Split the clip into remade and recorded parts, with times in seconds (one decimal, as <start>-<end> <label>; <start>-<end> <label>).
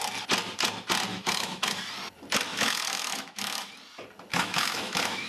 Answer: 0.0-1.1 recorded; 1.1-1.8 remade; 1.8-2.5 recorded; 2.5-3.7 remade; 3.7-4.3 recorded; 4.3-5.3 remade